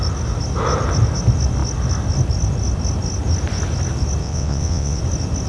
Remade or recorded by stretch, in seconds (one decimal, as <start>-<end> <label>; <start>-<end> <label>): 0.0-4.2 recorded; 4.2-5.0 remade; 5.0-5.5 recorded